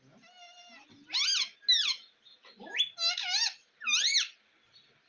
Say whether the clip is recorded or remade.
recorded